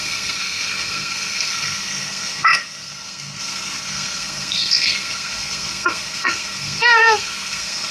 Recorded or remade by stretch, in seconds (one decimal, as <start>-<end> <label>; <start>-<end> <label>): 0.0-7.9 remade